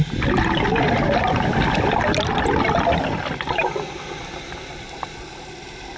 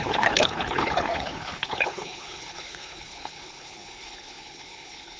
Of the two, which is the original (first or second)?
first